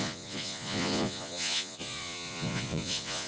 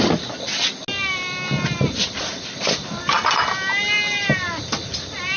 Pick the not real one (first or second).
first